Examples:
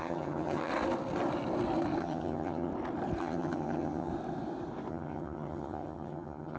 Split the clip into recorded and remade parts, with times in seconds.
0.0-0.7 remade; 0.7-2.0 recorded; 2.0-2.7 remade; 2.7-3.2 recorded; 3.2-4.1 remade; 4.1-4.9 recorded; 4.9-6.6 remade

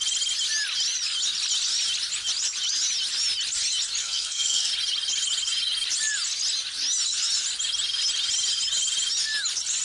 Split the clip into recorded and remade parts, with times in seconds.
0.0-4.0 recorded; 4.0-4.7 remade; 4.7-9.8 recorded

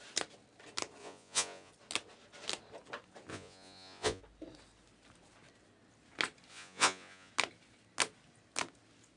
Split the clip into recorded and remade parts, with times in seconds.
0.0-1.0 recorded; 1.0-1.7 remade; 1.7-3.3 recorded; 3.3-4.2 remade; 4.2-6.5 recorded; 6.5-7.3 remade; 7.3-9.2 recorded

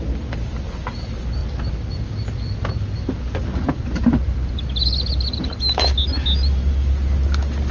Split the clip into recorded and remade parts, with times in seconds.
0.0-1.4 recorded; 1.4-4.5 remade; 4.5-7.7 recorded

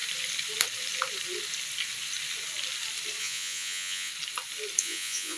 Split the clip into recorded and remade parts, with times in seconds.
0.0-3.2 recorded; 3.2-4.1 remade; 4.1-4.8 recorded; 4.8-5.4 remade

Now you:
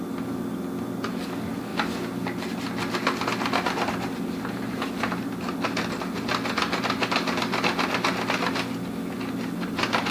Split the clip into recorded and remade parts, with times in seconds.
0.0-10.1 recorded

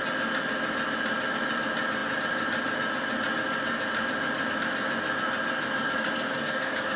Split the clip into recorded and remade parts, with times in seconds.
0.0-5.8 recorded; 5.8-7.0 remade

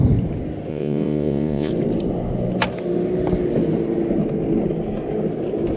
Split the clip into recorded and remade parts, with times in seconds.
0.0-0.7 recorded; 0.7-1.7 remade; 1.7-5.8 recorded